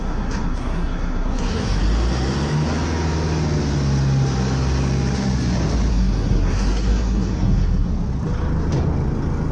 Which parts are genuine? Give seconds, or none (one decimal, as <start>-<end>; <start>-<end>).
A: 1.8-5.9; 7.9-9.5